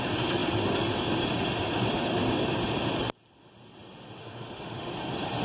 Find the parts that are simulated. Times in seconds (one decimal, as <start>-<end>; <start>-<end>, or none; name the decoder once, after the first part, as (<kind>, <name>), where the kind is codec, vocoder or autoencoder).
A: 4.2-4.9 (autoencoder, DAC-VAE)